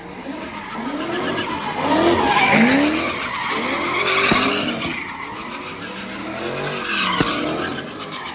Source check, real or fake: real